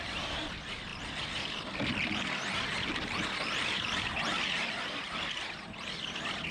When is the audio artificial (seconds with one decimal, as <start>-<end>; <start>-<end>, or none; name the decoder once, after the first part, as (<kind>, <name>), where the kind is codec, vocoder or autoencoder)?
none